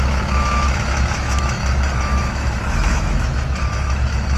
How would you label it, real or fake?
fake